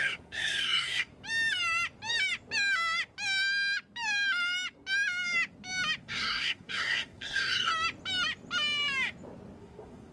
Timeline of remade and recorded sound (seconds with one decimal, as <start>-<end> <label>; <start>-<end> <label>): 0.0-1.1 remade; 1.1-6.0 recorded; 6.0-7.7 remade; 7.7-9.6 recorded; 9.6-10.1 remade